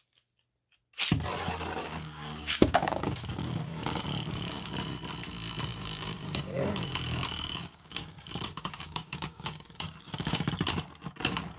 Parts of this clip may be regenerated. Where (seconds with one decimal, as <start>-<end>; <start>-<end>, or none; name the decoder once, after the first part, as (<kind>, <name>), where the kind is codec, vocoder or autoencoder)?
1.8-4.7 (codec, DAC); 5.7-10.5